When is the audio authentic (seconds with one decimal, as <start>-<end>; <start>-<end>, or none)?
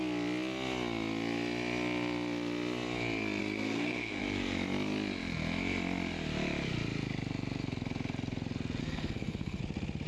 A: 0.0-3.4; 4.2-8.8; 9.6-10.1